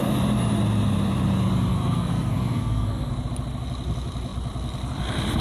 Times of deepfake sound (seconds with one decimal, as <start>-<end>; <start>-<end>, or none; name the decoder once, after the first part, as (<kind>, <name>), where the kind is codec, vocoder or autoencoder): 1.7-3.1 (codec, SNAC)